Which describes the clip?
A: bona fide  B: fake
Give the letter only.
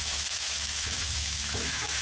B